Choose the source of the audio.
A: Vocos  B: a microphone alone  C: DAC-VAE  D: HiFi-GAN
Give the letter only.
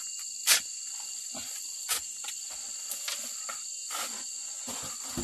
B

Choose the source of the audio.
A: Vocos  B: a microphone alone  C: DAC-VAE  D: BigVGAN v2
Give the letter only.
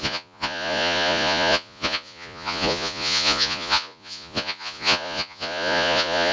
A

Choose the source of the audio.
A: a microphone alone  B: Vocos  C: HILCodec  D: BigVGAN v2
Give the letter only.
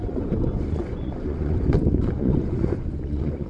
B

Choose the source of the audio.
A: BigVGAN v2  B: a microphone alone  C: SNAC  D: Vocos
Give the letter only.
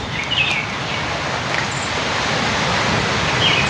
B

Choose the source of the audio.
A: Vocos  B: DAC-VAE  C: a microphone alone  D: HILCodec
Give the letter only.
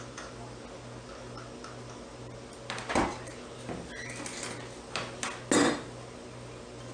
C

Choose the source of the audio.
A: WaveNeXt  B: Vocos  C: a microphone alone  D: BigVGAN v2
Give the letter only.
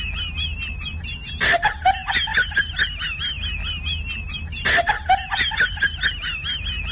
C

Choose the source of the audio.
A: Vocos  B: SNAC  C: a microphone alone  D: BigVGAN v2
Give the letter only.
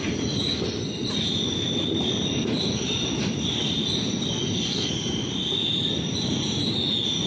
C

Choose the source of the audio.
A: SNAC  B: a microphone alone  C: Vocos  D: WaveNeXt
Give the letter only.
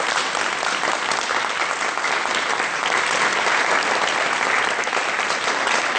B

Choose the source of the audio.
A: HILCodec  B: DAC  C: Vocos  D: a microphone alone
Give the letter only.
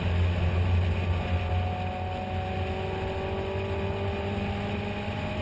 D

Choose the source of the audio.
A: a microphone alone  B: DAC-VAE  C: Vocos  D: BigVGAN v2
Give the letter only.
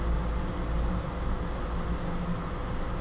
A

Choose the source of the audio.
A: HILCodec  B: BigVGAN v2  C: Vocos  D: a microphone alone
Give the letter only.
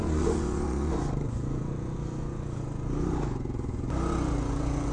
C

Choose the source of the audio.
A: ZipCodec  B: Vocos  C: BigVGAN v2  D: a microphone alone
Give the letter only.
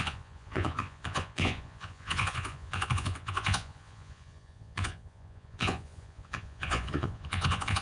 B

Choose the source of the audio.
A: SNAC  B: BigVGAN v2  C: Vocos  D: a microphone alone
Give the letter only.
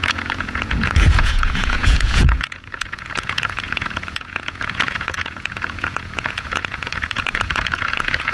C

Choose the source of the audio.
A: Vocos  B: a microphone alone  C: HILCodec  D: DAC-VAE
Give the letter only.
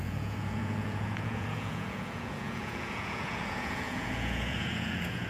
A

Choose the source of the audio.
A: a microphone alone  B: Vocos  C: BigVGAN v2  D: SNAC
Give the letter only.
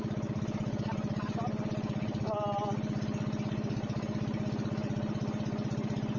A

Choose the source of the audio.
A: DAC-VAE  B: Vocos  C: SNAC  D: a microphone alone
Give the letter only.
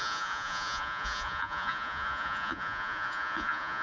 B